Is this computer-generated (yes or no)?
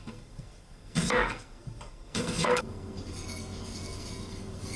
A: yes